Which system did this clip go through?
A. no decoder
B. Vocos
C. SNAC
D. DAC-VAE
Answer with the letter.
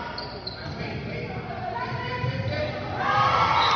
A